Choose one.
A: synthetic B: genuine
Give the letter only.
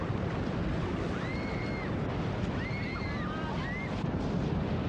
B